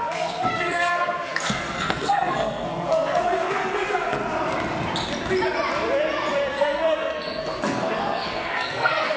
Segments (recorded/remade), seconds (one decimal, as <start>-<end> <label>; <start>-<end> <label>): 0.0-4.2 remade; 4.2-6.6 recorded; 6.6-9.2 remade